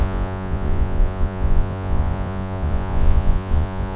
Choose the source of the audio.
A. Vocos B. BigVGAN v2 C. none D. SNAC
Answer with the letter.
A